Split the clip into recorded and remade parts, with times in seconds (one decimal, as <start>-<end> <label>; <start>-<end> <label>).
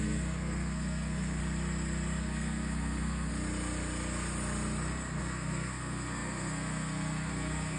0.0-1.4 remade; 1.4-2.2 recorded; 2.2-3.3 remade; 3.3-5.2 recorded; 5.2-7.8 remade